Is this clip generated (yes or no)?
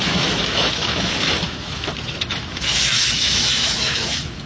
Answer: yes